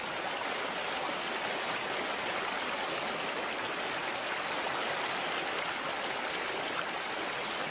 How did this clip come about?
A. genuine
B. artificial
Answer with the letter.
A